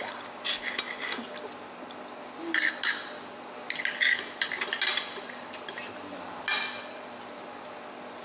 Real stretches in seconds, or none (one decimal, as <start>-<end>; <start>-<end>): 0.0-8.2